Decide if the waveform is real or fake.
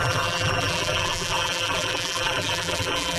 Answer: fake